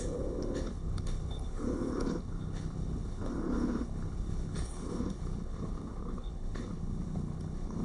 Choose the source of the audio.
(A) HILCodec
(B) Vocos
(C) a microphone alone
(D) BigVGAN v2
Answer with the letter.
A